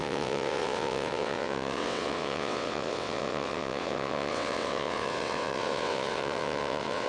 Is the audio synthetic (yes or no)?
yes